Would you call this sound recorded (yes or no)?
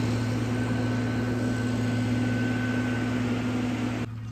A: yes